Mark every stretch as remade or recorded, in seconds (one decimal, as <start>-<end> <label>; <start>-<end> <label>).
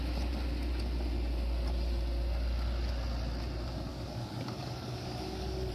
0.0-3.9 recorded; 3.9-5.7 remade